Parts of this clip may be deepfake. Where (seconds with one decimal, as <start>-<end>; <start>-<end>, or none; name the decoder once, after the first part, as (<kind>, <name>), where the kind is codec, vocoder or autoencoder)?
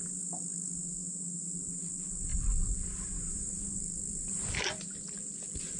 2.3-5.8 (vocoder, BigVGAN v2)